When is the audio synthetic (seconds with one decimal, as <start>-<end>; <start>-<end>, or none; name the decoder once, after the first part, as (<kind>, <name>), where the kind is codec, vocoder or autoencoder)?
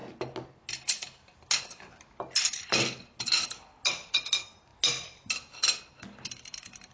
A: none